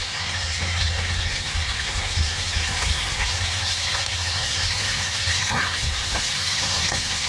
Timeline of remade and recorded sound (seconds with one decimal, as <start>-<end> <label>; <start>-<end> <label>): 0.0-7.3 remade